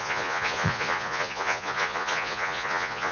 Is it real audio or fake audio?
fake